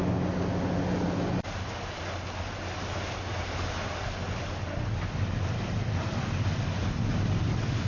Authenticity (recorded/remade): recorded